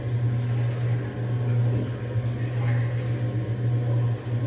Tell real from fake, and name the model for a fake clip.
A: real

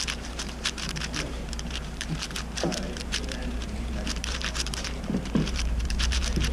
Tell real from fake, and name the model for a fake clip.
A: fake, vocoder, BigVGAN v2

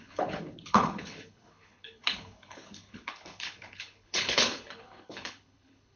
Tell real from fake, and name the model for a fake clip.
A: fake, codec, HILCodec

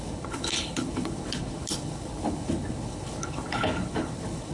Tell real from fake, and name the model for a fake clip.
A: fake, codec, HILCodec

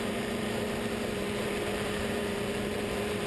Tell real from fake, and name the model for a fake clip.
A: fake, vocoder, BigVGAN v2